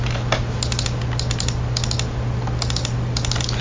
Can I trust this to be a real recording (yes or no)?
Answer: yes